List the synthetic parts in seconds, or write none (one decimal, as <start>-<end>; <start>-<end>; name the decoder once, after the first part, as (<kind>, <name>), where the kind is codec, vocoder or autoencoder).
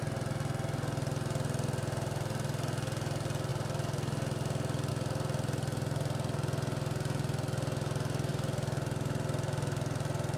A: none